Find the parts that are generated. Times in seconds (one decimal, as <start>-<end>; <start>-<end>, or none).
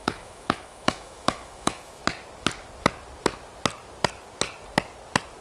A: 0.0-2.0